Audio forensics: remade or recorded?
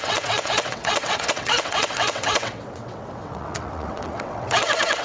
remade